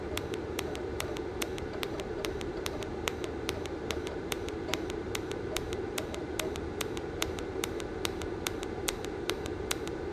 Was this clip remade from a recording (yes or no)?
yes